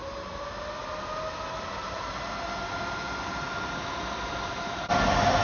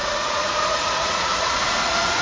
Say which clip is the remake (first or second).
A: second